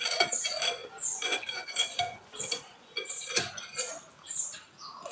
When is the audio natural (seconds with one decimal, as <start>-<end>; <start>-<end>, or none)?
0.0-0.8; 3.9-5.1